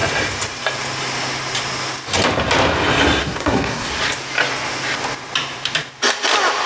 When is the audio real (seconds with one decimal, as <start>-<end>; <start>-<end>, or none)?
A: 0.0-3.2; 3.9-6.7